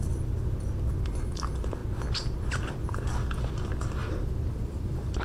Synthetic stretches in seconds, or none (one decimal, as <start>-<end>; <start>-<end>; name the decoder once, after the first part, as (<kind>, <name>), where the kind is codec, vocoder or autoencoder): 4.0-5.2 (vocoder, BigVGAN v2)